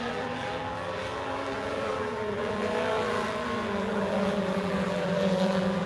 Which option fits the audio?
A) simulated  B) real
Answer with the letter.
A